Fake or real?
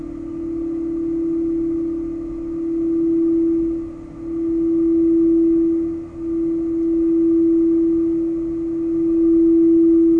real